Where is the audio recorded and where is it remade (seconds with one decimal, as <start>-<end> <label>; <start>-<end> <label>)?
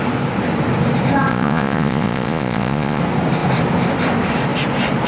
0.0-1.3 recorded; 1.3-3.0 remade; 3.0-5.1 recorded